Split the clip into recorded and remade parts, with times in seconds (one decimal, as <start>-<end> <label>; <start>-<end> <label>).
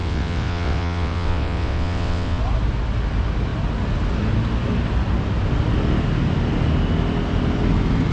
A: 0.0-2.4 remade; 2.4-8.1 recorded